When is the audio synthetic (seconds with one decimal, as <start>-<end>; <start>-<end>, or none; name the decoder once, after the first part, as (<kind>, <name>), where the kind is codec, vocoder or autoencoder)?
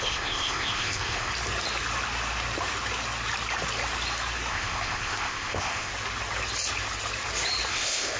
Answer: 0.0-1.3 (codec, ZipCodec); 4.5-5.9; 7.7-8.2